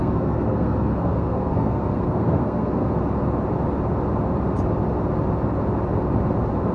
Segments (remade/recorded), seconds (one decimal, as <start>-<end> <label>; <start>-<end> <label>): 0.0-2.9 remade; 2.9-6.7 recorded